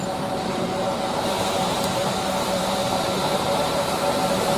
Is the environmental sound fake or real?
fake